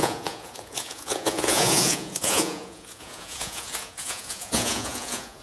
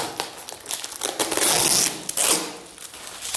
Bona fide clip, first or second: second